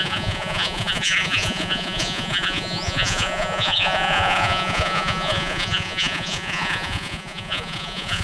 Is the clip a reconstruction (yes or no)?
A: yes